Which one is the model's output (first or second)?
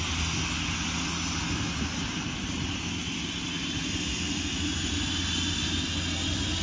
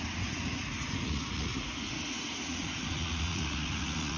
second